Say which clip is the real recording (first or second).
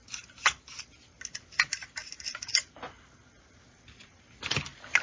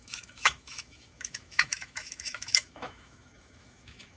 first